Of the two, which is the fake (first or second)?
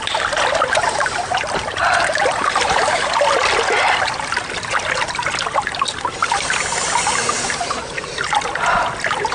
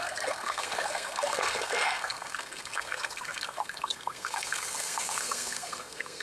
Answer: second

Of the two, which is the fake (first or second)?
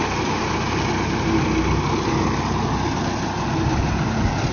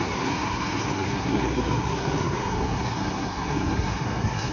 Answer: second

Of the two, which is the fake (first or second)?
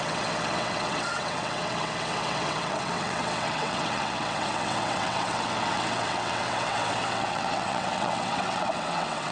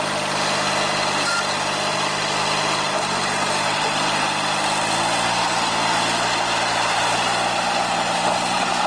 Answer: first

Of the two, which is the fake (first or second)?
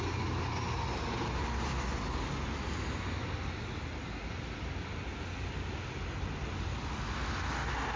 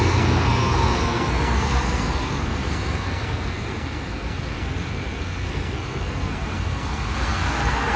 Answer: second